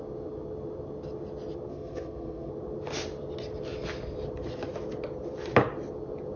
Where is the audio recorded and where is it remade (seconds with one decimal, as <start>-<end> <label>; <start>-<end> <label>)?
0.0-1.7 recorded; 1.7-2.5 remade; 2.5-6.4 recorded